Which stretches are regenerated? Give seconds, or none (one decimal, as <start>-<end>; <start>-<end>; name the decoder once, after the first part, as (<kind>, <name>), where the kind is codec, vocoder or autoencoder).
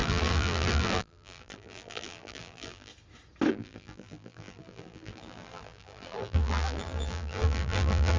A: 0.0-2.9 (vocoder, BigVGAN v2); 3.5-8.2